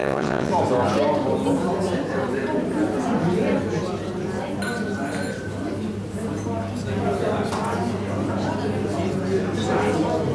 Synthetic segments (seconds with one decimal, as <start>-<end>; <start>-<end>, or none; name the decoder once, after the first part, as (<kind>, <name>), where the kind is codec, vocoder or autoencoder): 0.0-0.5 (vocoder, WaveNeXt)